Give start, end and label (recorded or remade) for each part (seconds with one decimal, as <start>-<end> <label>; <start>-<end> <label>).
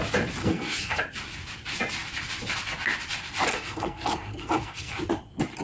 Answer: 0.0-0.4 recorded; 0.4-1.0 remade; 1.0-3.5 recorded; 3.5-5.0 remade; 5.0-5.6 recorded